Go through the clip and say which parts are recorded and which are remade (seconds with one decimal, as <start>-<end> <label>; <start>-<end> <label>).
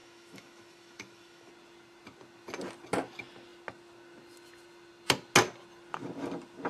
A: 0.0-1.5 remade; 1.5-6.7 recorded